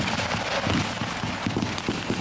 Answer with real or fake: real